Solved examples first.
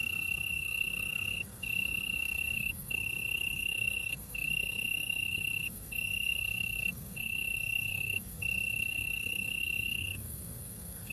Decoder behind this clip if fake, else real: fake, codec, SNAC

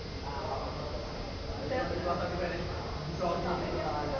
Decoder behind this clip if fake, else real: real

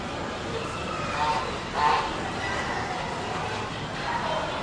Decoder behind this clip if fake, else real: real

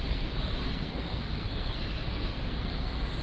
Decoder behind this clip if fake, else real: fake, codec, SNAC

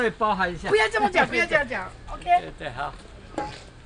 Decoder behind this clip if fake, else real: real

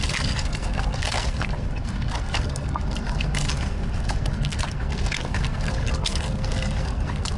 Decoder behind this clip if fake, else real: fake, codec, SNAC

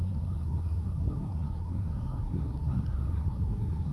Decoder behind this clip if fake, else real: fake, codec, SNAC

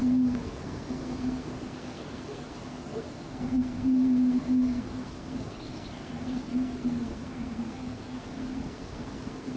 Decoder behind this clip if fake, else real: fake, codec, SNAC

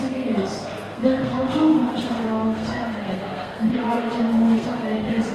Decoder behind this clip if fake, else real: fake, codec, SNAC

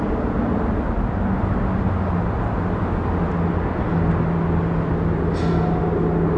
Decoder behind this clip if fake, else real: real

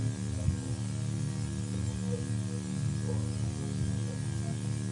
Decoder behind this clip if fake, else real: real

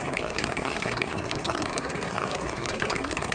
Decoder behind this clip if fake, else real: fake, codec, SNAC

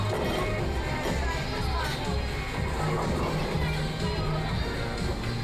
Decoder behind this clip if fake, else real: real